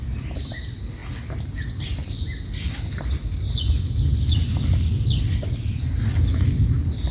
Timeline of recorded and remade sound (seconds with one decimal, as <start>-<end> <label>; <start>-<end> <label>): 0.0-7.1 recorded